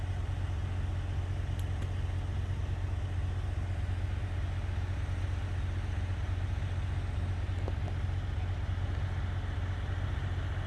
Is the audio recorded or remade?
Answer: recorded